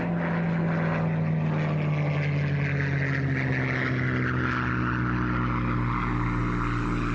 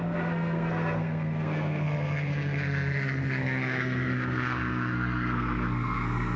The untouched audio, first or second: first